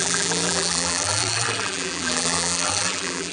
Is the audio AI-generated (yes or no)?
yes